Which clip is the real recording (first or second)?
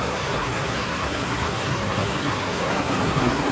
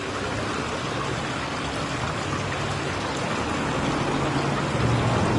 second